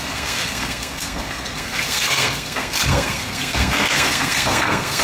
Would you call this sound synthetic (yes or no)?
yes